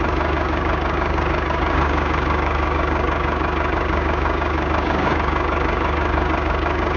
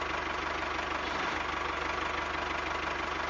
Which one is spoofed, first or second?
first